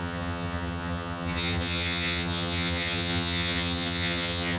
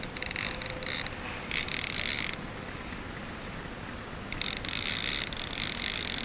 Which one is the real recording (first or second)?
second